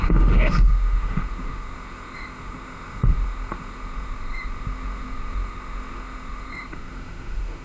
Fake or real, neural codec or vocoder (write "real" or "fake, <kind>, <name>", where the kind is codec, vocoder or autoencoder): fake, autoencoder, DAC-VAE